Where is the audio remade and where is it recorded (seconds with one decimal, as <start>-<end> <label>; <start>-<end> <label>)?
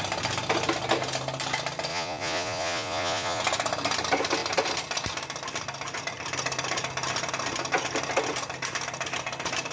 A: 0.0-1.9 recorded; 1.9-3.4 remade; 3.4-9.7 recorded